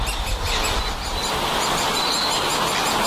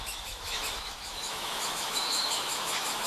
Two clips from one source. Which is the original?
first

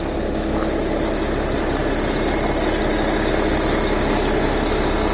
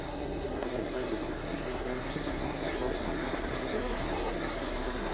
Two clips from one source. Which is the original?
first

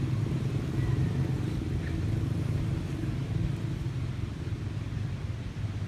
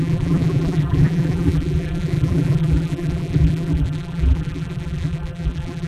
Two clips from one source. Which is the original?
first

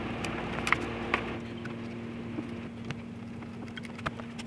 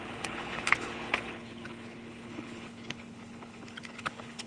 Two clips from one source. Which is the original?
first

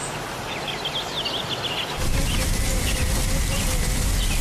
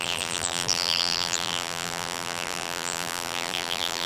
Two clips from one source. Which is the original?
first